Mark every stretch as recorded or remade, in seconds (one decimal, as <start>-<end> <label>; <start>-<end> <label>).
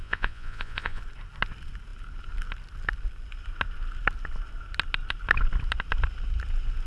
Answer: 0.0-1.0 remade; 1.0-6.9 recorded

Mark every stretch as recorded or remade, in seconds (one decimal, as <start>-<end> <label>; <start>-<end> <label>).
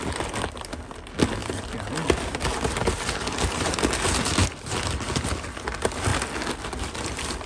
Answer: 0.0-7.5 recorded